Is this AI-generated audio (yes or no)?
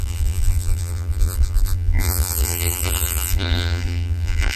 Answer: yes